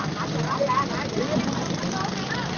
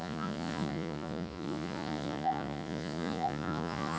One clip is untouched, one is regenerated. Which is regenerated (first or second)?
second